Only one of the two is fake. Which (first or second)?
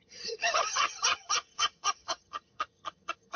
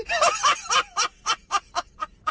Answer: first